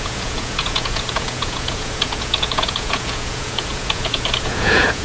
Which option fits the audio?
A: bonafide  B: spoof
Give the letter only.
B